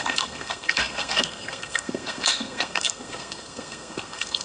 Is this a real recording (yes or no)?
no